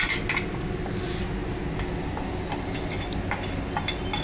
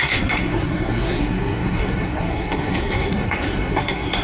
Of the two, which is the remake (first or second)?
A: second